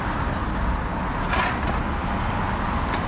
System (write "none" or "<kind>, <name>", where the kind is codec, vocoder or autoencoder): none